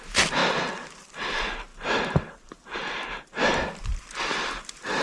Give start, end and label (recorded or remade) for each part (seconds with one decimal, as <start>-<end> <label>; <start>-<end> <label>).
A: 0.0-5.0 recorded